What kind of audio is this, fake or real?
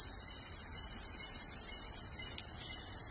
real